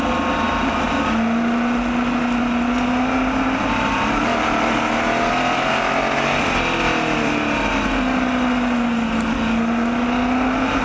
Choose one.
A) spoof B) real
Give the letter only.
B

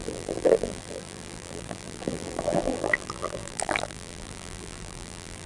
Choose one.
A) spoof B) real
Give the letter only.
A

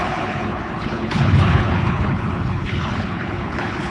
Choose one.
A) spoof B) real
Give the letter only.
A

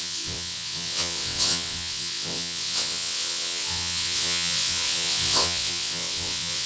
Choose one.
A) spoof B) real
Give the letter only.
A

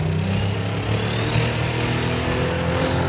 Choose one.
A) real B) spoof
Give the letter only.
A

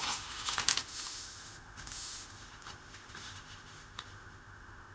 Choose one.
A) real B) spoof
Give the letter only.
B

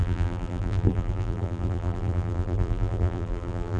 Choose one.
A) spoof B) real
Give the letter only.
A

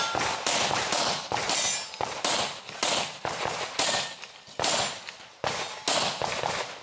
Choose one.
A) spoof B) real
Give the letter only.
B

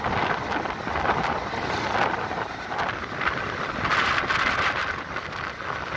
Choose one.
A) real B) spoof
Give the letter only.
A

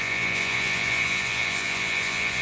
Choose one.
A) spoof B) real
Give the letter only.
A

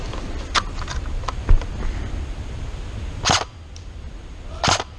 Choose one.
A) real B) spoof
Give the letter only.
A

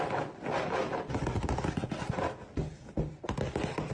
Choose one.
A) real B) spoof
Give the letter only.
A